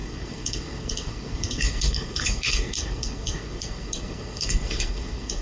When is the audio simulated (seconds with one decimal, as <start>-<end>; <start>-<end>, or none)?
0.0-5.4